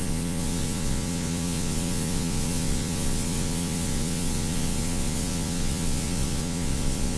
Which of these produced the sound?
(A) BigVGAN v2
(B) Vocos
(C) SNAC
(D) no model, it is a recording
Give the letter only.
B